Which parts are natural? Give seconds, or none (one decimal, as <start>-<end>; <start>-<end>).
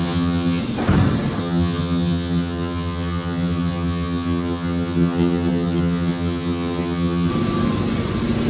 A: 0.6-1.4; 7.3-8.5